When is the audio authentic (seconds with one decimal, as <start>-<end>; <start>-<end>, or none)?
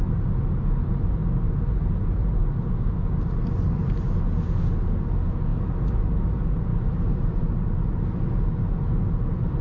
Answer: 0.0-9.6